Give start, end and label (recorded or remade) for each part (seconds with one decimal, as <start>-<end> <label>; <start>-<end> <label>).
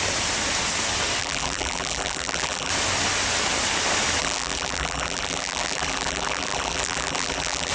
0.0-1.2 recorded; 1.2-2.7 remade; 2.7-4.2 recorded; 4.2-7.7 remade